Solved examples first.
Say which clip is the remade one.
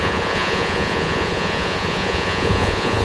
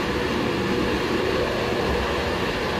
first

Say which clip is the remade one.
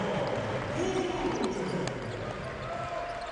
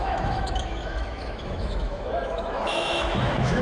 second